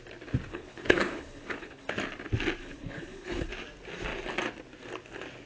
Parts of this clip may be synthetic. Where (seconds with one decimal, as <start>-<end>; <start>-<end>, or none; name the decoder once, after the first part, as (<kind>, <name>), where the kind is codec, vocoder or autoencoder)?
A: 0.5-1.9 (codec, HILCodec); 2.6-3.5